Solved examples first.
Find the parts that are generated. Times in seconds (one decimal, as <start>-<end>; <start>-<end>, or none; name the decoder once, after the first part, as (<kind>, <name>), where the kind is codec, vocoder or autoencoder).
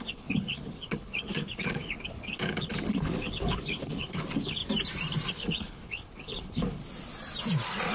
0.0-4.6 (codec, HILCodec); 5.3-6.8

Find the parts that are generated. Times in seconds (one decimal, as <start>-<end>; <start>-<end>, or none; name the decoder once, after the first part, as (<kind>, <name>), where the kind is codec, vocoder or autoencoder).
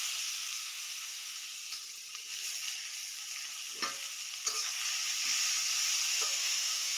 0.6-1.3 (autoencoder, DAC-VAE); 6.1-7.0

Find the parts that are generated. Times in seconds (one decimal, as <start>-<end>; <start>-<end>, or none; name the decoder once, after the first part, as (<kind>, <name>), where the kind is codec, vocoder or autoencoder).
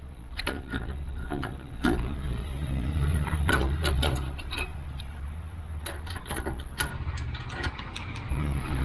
0.0-6.9 (vocoder, Vocos); 8.3-8.8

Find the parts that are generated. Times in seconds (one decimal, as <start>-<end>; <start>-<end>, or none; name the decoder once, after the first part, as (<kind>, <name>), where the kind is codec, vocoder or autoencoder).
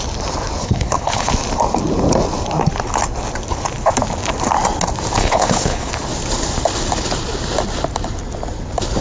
0.6-1.3 (codec, HILCodec); 5.2-5.9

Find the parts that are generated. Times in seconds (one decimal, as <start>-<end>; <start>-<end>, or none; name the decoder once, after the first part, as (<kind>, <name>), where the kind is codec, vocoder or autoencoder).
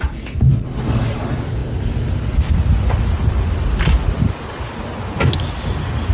none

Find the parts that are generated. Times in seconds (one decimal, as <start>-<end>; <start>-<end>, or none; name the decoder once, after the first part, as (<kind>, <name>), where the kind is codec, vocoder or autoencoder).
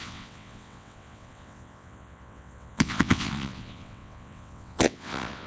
0.0-5.5 (vocoder, WaveNeXt)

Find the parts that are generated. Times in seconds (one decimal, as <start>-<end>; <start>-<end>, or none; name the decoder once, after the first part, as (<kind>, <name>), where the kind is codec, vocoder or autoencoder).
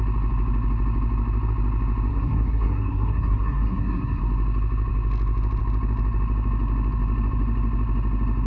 2.1-4.2 (codec, SNAC)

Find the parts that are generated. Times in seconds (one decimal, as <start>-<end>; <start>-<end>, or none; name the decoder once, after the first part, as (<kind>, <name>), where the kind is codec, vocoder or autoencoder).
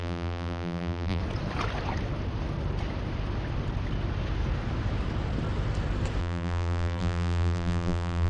0.0-1.2 (vocoder, BigVGAN v2); 6.2-8.3